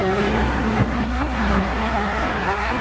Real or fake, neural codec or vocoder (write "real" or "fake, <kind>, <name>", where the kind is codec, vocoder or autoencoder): fake, codec, SNAC